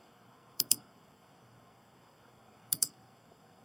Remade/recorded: remade